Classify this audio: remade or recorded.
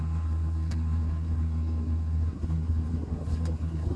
remade